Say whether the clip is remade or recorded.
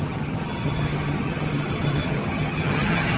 remade